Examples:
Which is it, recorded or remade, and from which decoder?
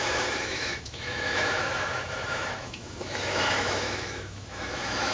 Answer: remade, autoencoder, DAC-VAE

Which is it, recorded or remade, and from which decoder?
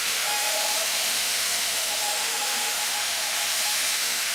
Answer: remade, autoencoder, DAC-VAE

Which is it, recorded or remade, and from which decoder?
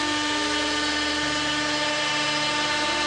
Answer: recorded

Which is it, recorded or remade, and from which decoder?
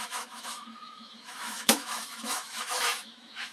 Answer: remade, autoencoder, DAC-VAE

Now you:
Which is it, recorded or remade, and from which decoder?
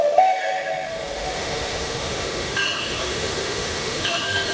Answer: remade, autoencoder, DAC-VAE